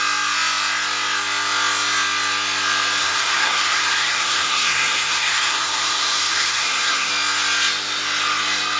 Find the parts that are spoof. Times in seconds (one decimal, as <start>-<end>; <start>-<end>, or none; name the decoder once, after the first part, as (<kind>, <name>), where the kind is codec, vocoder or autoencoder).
3.0-7.1 (codec, SNAC)